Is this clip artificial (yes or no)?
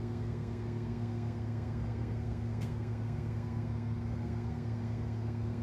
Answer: yes